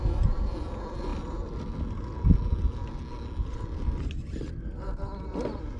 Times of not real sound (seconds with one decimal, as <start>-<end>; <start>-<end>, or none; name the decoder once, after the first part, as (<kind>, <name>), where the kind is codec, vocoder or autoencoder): none